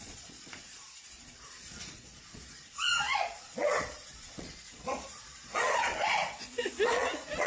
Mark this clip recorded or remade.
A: remade